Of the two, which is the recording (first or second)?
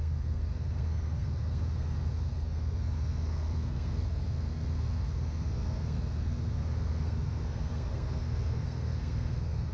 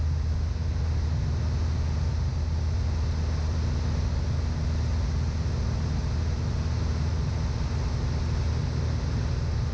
second